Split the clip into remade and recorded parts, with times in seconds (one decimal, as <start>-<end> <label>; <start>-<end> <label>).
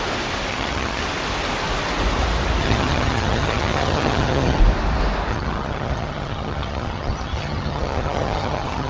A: 0.0-0.5 recorded; 0.5-1.0 remade; 1.0-2.6 recorded; 2.6-4.6 remade; 4.6-5.3 recorded; 5.3-8.9 remade